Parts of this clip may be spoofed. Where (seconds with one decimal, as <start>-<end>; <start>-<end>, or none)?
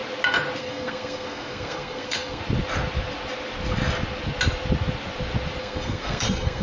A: 0.6-2.4; 5.6-6.6